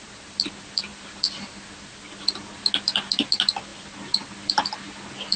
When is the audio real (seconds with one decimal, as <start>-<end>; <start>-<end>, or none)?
0.0-5.4